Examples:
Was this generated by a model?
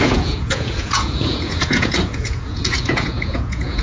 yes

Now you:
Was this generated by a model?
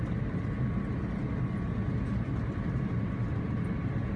no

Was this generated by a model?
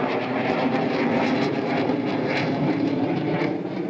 yes